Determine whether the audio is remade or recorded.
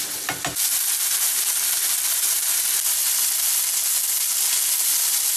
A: recorded